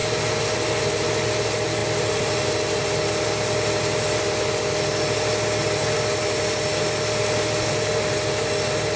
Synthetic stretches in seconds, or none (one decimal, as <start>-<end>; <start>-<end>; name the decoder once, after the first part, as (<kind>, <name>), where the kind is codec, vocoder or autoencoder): none